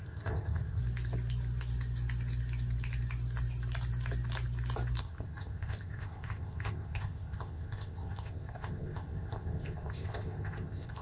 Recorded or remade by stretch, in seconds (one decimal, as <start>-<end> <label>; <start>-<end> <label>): 0.0-0.8 remade; 0.8-5.0 recorded; 5.0-11.0 remade